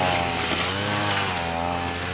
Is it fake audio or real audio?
real